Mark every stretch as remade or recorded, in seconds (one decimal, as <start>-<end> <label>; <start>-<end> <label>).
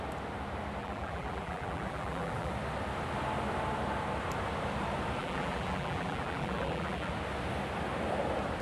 0.0-0.8 recorded; 0.8-2.5 remade; 2.5-5.2 recorded; 5.2-7.1 remade; 7.1-8.6 recorded